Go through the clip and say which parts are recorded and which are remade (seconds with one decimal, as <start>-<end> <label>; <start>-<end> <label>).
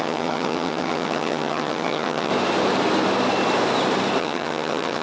0.0-2.3 remade; 2.3-4.2 recorded; 4.2-5.0 remade